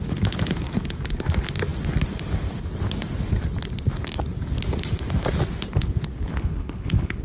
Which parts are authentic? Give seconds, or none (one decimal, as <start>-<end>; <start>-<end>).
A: 0.0-6.3